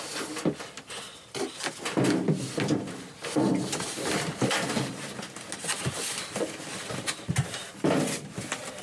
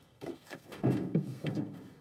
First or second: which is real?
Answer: first